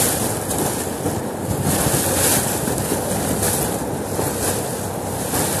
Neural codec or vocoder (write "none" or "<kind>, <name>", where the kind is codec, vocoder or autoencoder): none